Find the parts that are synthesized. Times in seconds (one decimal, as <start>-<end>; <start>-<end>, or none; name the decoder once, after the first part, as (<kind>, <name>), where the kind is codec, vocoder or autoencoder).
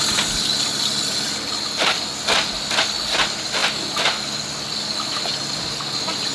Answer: none